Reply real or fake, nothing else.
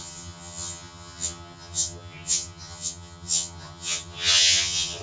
fake